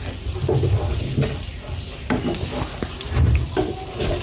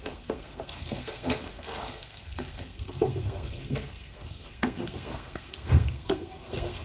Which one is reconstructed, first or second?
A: second